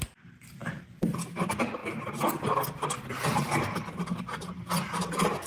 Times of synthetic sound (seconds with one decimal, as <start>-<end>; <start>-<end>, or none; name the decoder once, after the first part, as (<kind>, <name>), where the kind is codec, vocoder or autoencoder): none